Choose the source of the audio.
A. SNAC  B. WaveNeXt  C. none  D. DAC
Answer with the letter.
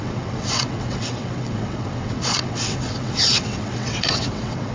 B